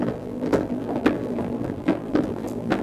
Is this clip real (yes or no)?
no